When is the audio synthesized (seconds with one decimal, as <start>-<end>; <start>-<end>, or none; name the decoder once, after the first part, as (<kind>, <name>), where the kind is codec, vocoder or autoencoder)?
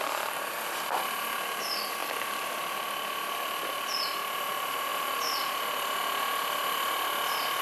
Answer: 0.0-4.9 (vocoder, BigVGAN v2)